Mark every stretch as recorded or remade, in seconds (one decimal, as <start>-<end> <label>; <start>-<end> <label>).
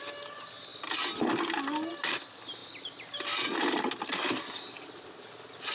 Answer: 0.0-2.6 recorded; 2.6-3.5 remade; 3.5-5.7 recorded